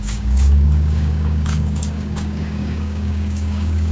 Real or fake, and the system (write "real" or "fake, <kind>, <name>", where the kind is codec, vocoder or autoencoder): fake, codec, DAC